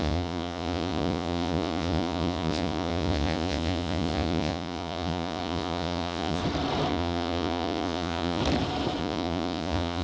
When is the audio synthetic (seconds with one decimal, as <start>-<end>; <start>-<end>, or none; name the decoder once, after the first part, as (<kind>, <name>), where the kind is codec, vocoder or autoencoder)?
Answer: 0.0-6.4 (vocoder, Vocos); 6.9-8.4; 9.0-10.0